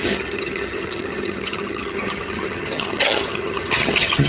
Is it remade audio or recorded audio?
remade